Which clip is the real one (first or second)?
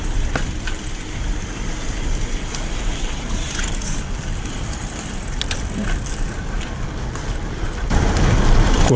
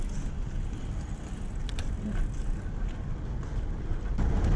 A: second